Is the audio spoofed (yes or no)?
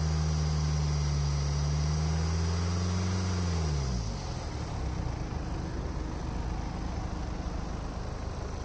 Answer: no